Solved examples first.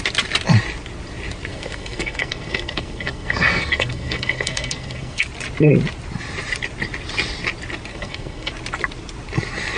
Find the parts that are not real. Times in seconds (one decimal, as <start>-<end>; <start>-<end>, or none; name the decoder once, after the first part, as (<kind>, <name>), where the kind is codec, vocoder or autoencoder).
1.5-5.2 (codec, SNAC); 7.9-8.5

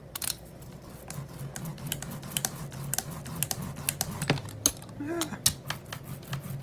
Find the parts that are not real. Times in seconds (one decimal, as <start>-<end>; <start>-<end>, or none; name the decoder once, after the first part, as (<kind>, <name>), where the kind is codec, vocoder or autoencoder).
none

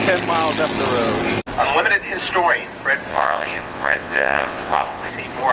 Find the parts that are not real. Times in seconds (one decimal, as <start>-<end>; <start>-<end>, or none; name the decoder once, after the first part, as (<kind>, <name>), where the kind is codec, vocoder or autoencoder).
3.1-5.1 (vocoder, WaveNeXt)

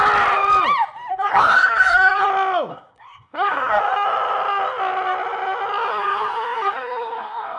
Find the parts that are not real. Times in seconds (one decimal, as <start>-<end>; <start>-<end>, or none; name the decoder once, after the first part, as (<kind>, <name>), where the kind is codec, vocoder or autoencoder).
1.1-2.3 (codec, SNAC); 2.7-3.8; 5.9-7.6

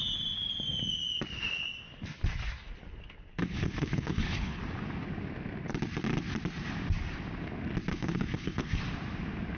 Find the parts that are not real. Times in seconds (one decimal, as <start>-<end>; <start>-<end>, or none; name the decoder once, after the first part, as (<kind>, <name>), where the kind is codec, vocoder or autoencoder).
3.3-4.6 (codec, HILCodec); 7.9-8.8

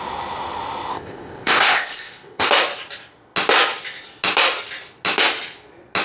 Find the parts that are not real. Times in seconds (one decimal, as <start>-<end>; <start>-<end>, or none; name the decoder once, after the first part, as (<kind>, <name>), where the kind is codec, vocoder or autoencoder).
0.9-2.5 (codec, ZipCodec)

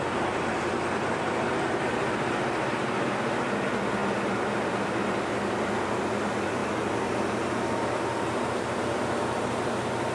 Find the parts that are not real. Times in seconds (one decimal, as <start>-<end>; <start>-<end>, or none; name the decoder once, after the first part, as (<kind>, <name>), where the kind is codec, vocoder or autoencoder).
none